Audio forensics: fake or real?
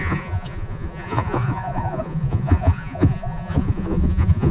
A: fake